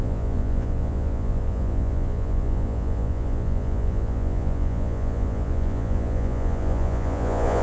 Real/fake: fake